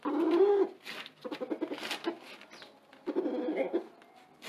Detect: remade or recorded recorded